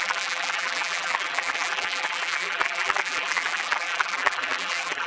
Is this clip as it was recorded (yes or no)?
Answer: no